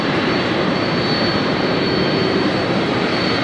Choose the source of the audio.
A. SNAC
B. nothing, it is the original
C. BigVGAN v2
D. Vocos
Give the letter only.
C